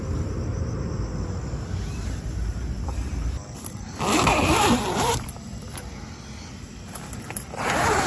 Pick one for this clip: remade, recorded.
recorded